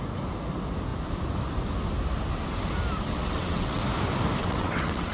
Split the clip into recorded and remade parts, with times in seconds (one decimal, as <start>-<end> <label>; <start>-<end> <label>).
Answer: 0.0-3.1 recorded; 3.1-3.8 remade; 3.8-4.4 recorded; 4.4-5.1 remade